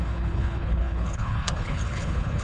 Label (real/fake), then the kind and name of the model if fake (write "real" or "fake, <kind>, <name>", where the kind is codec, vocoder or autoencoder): fake, codec, HILCodec